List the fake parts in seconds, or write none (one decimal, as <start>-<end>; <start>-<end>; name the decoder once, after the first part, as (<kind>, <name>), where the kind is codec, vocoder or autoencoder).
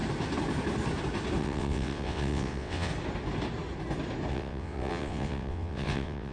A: 1.4-2.9 (vocoder, WaveNeXt); 4.3-6.3